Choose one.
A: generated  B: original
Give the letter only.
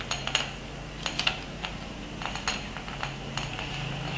B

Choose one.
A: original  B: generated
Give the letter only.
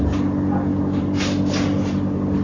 A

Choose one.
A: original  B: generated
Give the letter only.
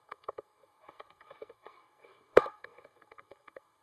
B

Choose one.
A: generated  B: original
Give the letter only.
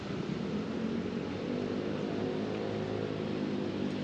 B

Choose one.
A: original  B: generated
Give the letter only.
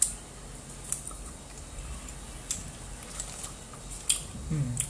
A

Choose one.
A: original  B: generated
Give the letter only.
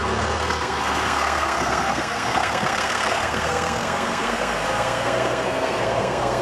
B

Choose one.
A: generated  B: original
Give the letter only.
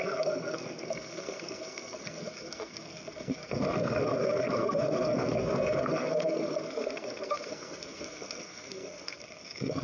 A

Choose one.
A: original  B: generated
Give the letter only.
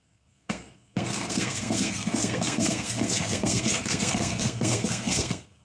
B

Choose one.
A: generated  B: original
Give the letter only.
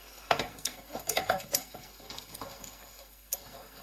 A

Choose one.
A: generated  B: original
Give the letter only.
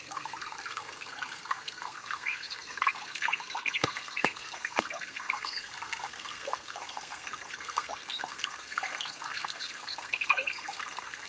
A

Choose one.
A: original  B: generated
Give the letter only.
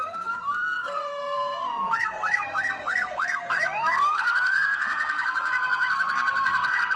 B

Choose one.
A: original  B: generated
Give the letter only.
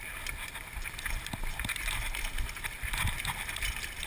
A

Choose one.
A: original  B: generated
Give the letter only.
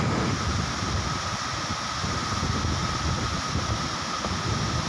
A